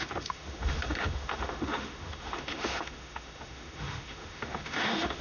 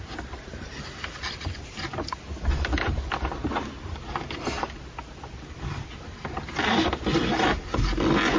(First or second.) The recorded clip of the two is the second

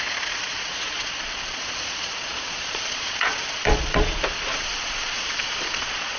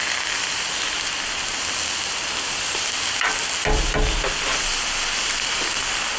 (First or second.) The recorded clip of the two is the second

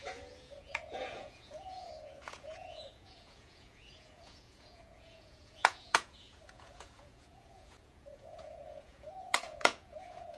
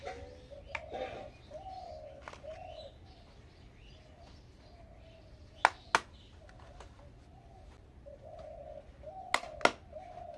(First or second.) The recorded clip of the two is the second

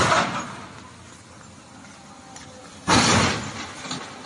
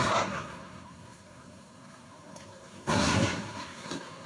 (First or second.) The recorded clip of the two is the first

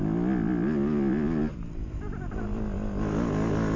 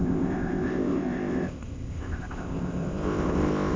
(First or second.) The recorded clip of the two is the first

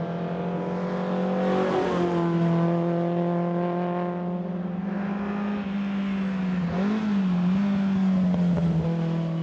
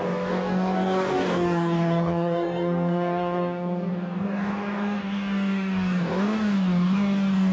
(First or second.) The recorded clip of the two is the first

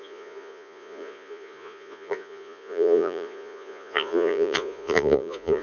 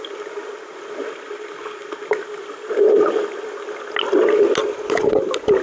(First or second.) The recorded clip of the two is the second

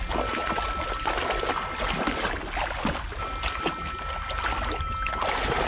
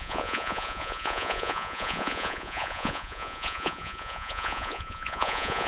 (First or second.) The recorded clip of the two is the first